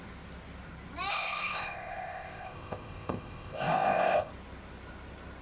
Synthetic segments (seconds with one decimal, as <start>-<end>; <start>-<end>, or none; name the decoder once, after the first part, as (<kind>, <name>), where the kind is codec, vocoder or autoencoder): 1.1-4.3 (codec, ZipCodec)